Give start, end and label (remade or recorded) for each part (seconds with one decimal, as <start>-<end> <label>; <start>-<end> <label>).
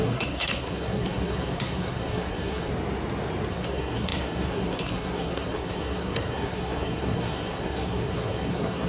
0.0-2.7 remade; 2.7-3.5 recorded; 3.5-8.9 remade